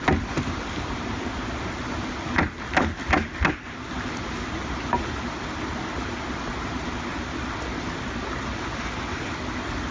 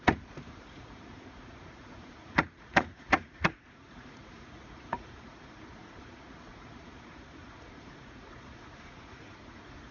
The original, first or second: first